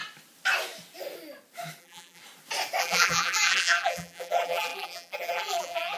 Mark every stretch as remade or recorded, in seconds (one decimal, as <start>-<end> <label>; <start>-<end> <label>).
0.0-1.8 recorded; 1.8-2.2 remade; 2.2-2.8 recorded; 2.8-6.0 remade